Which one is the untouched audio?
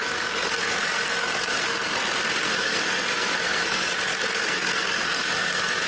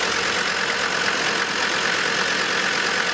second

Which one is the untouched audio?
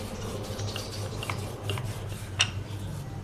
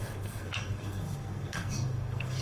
first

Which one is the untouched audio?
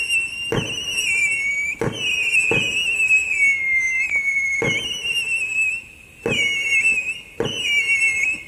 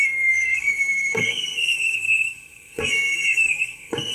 first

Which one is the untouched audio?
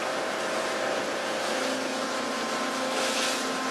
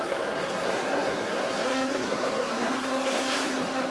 first